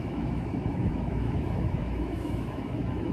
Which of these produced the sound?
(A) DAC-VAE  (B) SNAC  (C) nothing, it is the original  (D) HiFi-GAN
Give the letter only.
A